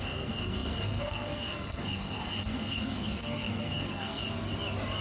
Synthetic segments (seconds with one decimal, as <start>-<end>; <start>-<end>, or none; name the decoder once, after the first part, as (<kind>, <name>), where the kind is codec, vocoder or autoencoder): 0.0-4.2 (codec, SNAC)